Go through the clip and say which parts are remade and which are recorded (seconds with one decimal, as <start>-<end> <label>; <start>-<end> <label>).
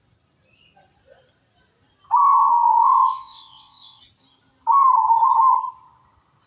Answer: 0.0-2.2 recorded; 2.2-4.0 remade; 4.0-6.5 recorded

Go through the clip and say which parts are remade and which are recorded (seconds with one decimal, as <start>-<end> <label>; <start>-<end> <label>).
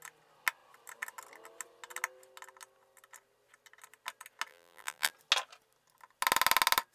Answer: 0.0-4.5 recorded; 4.5-5.1 remade; 5.1-6.9 recorded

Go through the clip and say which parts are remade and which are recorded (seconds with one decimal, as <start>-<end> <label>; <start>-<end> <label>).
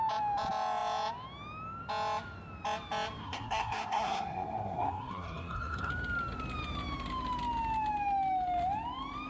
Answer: 0.0-3.2 recorded; 3.2-5.9 remade; 5.9-9.3 recorded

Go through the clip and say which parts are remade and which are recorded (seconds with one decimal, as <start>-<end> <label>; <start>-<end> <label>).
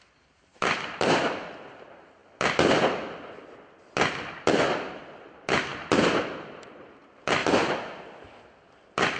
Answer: 0.0-2.2 remade; 2.2-4.9 recorded; 4.9-5.7 remade; 5.7-6.2 recorded; 6.2-9.2 remade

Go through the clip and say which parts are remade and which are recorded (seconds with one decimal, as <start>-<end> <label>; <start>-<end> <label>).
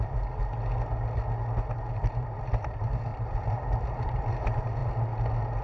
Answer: 0.0-0.4 remade; 0.4-1.7 recorded; 1.7-4.8 remade; 4.8-5.6 recorded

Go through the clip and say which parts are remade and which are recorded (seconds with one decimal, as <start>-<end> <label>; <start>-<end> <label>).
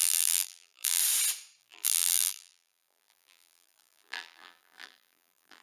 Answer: 0.0-1.0 remade; 1.0-1.6 recorded; 1.6-5.6 remade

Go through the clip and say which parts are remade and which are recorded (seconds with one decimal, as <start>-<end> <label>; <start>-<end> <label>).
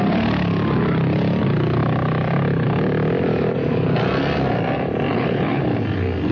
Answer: 0.0-5.1 recorded; 5.1-5.6 remade; 5.6-6.3 recorded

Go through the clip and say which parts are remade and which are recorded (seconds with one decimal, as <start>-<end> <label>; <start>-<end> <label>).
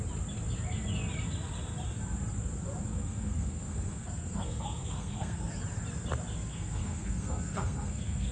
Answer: 0.0-2.9 recorded; 2.9-5.5 remade; 5.5-6.5 recorded; 6.5-8.3 remade